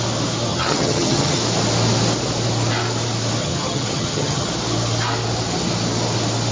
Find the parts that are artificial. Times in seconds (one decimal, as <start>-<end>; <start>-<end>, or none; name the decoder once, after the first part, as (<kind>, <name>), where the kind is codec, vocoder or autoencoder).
0.5-1.4 (vocoder, HiFi-GAN); 3.4-4.5